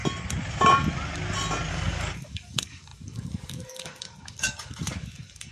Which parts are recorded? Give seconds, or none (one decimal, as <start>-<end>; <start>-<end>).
0.0-1.7